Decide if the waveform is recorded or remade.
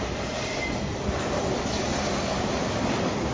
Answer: recorded